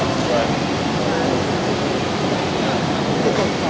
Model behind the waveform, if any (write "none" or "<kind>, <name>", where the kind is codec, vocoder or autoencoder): none